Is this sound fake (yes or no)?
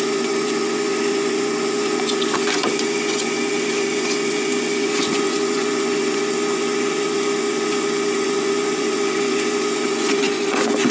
yes